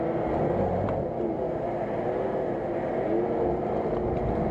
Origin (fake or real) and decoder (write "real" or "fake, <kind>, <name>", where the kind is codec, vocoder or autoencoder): real